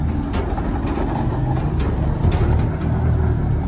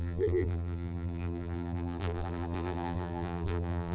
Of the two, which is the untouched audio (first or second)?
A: first